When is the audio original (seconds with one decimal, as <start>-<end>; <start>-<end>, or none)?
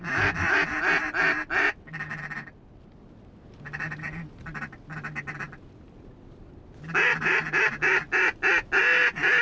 0.0-9.4